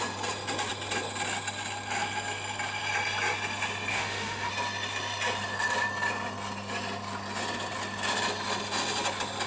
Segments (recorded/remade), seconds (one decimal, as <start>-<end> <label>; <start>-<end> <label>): 0.0-3.9 recorded; 3.9-4.5 remade; 4.5-9.5 recorded